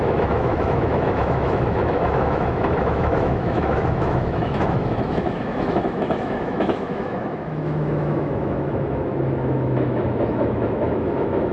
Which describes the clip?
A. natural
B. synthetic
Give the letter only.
B